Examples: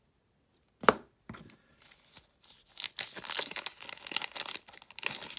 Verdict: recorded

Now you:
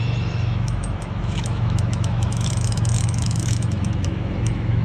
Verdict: remade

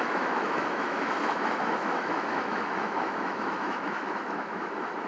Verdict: remade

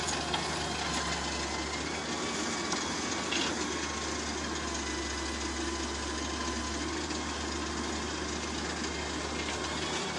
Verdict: recorded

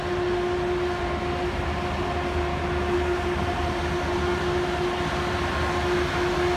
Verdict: recorded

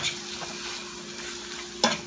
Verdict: recorded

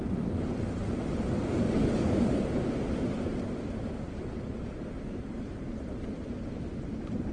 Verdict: recorded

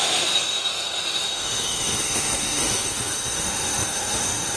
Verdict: remade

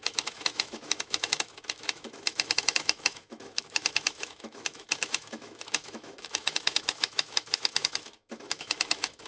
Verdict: remade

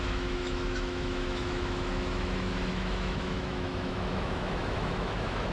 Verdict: remade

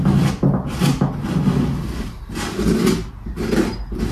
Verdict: recorded